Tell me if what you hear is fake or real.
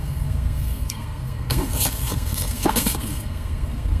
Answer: fake